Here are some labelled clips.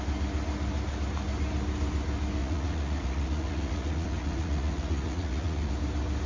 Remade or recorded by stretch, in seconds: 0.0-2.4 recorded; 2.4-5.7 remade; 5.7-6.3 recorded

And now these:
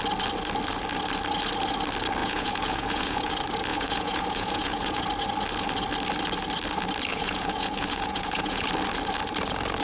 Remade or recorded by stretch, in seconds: 0.0-2.2 recorded; 2.2-3.3 remade; 3.3-3.7 recorded; 3.7-5.0 remade; 5.0-7.1 recorded; 7.1-8.7 remade; 8.7-9.8 recorded

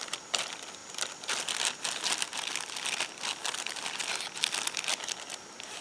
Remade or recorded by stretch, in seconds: 0.0-5.8 recorded

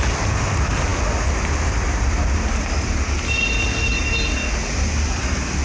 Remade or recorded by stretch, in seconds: 0.0-5.6 recorded